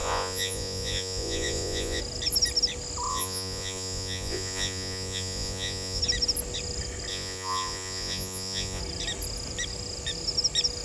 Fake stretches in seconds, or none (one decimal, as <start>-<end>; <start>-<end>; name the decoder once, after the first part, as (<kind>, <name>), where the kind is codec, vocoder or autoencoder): 0.0-2.0 (vocoder, Vocos); 3.1-6.0; 7.1-8.8